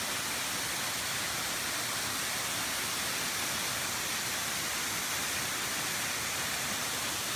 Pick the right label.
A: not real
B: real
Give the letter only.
B